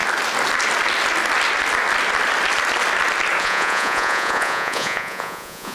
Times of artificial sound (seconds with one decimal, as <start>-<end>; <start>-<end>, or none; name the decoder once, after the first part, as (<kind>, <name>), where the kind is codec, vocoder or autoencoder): 3.4-5.7 (vocoder, Vocos)